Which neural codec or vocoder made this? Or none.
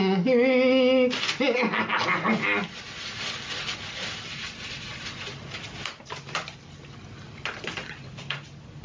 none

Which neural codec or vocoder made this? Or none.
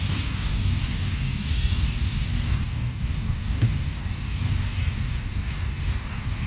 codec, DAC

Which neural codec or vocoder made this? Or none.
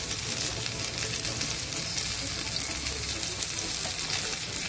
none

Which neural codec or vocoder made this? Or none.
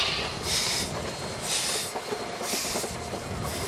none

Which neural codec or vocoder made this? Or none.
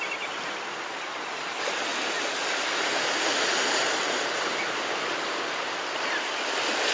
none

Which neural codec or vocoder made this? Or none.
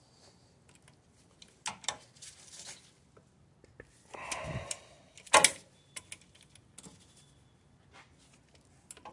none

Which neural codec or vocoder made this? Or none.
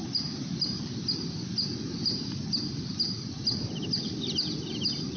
none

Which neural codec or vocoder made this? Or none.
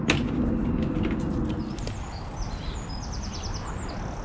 none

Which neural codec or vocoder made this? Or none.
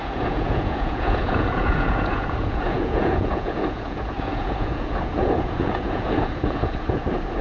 vocoder, Vocos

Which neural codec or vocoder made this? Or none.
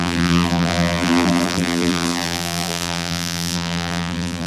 vocoder, BigVGAN v2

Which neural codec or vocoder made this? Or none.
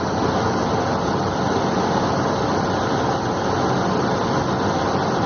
none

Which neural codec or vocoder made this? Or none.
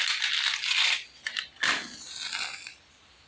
none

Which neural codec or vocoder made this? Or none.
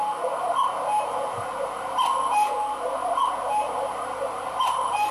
none